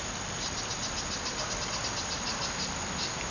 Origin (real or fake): real